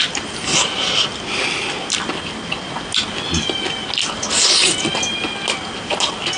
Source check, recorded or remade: recorded